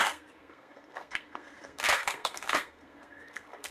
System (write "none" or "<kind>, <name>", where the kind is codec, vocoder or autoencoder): codec, SNAC